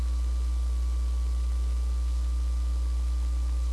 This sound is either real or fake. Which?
real